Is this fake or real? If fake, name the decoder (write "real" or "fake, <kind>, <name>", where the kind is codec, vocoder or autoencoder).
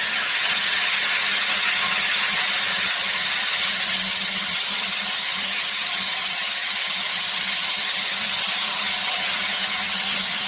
fake, vocoder, HiFi-GAN